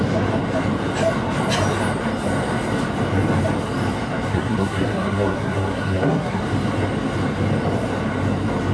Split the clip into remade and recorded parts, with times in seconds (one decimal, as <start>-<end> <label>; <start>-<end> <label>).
0.0-4.3 recorded; 4.3-6.4 remade; 6.4-8.7 recorded